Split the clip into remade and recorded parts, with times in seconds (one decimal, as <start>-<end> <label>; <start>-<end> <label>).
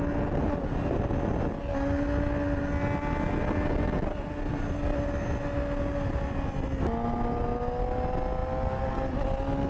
0.0-9.7 recorded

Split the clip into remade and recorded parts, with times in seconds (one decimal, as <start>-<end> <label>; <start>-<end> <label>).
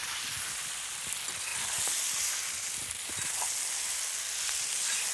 0.0-5.1 recorded